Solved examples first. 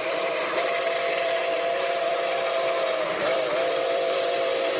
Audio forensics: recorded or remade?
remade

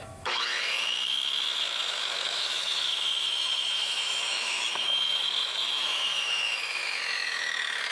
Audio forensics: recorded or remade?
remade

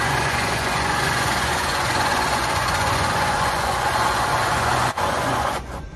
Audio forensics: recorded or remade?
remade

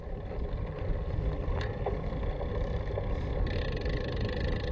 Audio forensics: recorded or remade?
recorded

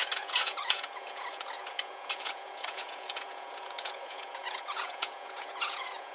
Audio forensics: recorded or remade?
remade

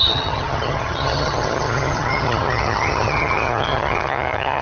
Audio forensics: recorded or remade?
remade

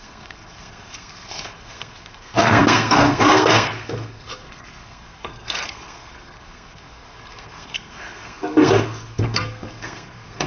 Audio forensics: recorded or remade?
remade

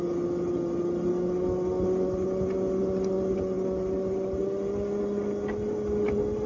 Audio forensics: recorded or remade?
recorded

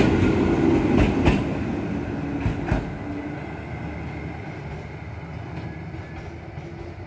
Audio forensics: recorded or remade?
recorded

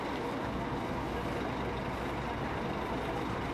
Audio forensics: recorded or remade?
recorded